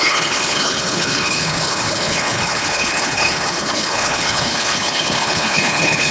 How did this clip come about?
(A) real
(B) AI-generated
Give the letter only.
B